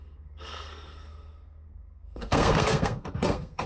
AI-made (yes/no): yes